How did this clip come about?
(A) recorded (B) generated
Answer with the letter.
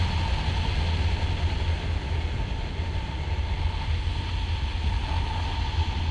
A